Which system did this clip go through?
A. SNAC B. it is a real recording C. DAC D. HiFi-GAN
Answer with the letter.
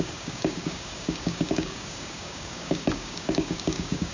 C